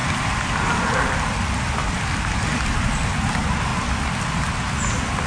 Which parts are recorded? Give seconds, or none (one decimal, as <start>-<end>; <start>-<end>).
0.0-5.3